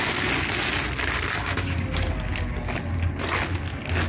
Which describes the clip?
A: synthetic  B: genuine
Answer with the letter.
B